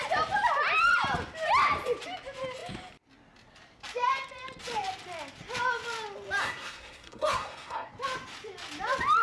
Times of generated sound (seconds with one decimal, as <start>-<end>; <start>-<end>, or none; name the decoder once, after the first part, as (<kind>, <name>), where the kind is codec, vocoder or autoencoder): 6.4-7.9 (codec, SNAC)